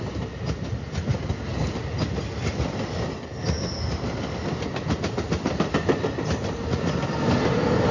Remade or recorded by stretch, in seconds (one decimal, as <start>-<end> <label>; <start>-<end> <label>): 0.0-7.9 recorded